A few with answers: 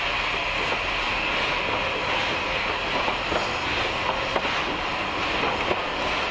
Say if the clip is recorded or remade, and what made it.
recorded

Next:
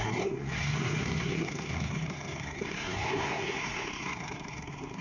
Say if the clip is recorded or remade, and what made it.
remade, codec, SNAC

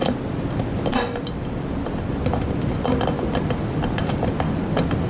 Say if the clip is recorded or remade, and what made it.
recorded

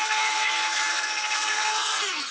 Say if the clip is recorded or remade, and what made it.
remade, codec, SNAC